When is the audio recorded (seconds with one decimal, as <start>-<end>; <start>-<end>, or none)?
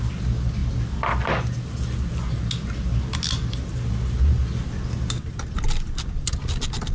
0.0-6.9